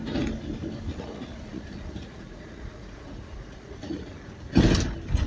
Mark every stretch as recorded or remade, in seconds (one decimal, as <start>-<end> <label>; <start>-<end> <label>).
0.0-0.9 recorded; 0.9-4.1 remade; 4.1-5.3 recorded